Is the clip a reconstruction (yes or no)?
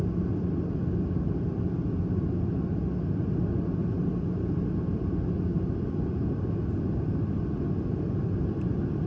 no